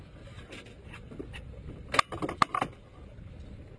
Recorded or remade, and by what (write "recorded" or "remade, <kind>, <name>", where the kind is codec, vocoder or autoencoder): recorded